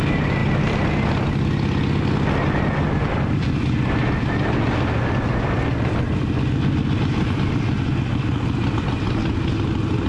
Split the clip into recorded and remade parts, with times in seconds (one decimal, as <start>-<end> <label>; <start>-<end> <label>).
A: 0.0-10.1 recorded